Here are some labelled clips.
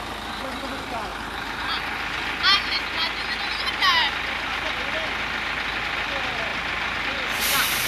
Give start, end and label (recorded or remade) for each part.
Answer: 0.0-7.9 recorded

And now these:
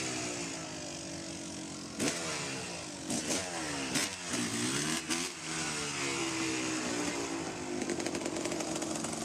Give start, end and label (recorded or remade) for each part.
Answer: 0.0-9.2 recorded

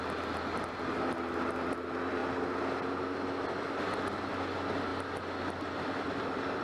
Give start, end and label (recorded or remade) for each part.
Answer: 0.0-6.6 recorded

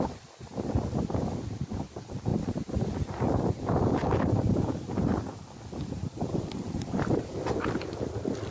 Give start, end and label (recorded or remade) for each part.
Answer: 0.0-2.3 recorded; 2.3-2.9 remade; 2.9-8.5 recorded

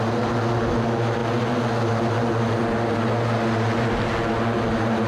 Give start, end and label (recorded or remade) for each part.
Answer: 0.0-5.1 recorded

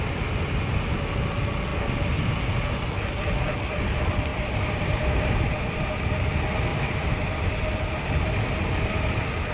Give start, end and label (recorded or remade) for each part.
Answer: 0.0-4.3 recorded; 4.3-5.9 remade; 5.9-6.7 recorded; 6.7-7.4 remade; 7.4-9.5 recorded